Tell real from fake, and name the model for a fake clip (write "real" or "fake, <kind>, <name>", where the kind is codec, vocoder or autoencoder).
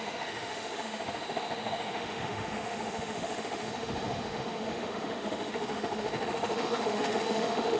fake, autoencoder, DAC-VAE